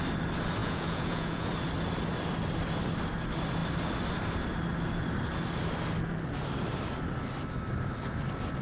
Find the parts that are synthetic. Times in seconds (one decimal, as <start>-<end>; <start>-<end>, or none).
0.6-1.5